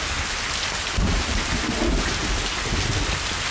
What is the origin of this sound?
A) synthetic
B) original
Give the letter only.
B